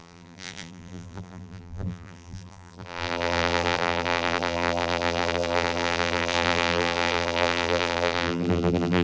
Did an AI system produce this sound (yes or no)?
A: yes